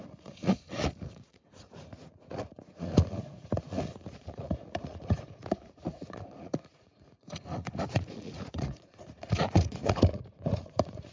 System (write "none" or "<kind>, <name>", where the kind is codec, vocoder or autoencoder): vocoder, Vocos